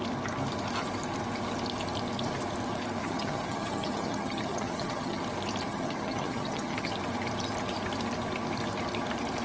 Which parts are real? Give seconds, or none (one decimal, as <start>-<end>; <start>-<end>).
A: 0.0-3.0; 5.2-5.7; 6.9-9.4